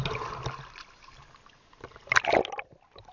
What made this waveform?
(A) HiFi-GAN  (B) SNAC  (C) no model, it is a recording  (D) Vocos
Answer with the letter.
C